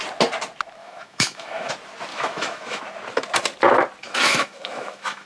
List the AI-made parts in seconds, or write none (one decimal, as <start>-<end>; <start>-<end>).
0.8-1.7; 2.1-2.8; 4.0-5.3